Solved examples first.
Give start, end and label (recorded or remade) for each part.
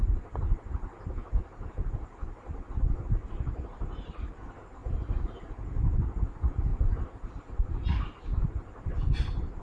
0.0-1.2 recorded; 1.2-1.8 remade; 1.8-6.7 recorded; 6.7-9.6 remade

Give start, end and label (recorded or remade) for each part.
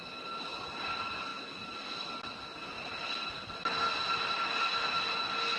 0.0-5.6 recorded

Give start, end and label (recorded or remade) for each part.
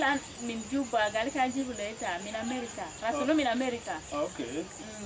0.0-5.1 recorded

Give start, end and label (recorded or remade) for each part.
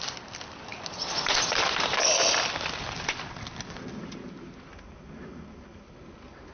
0.0-6.5 recorded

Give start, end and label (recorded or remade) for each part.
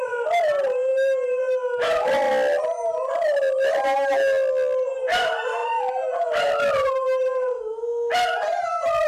0.0-9.1 recorded